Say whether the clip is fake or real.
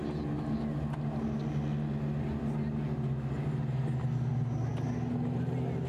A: real